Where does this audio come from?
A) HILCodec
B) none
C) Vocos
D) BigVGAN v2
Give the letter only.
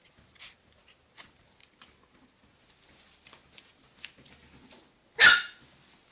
B